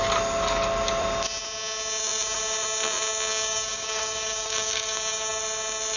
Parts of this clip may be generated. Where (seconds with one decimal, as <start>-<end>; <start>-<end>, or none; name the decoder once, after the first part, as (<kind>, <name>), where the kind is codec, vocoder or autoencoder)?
3.3-5.3 (codec, DAC)